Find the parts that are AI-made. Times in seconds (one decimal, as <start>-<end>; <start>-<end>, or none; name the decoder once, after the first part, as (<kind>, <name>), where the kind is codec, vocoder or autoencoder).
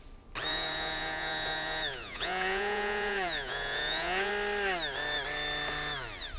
0.5-4.3 (vocoder, Vocos)